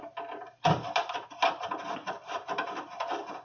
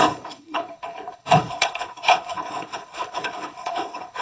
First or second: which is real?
first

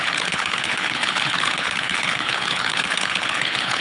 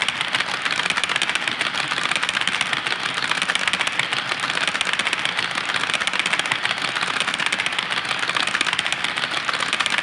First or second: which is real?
second